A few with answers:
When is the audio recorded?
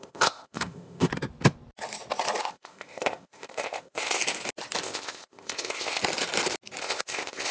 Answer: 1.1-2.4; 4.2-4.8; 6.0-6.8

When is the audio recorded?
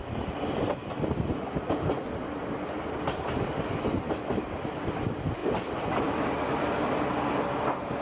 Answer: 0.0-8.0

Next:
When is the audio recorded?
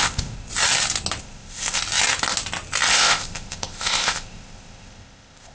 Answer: 0.5-1.2; 1.8-2.9